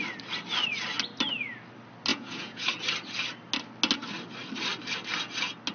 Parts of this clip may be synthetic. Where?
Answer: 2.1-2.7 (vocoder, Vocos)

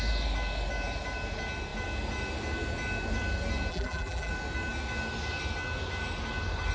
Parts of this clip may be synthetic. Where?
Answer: 3.7-4.3 (vocoder, BigVGAN v2)

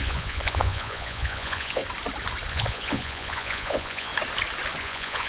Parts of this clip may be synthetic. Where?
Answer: 0.0-1.8 (vocoder, Vocos); 2.5-4.1; 4.8-5.3